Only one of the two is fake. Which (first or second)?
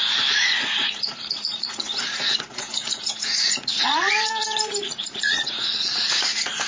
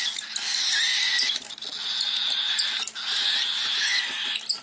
first